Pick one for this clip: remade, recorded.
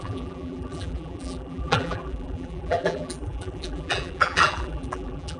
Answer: remade